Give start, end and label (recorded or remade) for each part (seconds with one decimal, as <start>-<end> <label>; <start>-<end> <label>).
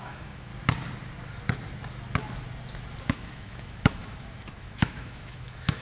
0.0-0.5 remade; 0.5-3.1 recorded; 3.1-5.8 remade